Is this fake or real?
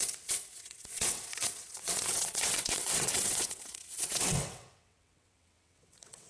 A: fake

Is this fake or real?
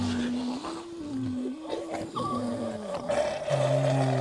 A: real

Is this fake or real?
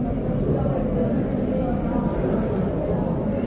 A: fake